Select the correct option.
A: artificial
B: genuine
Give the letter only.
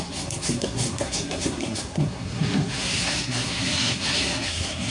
A